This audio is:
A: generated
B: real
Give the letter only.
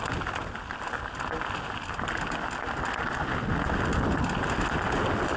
B